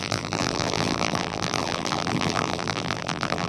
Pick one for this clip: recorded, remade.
remade